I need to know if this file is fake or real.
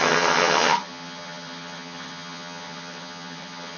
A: fake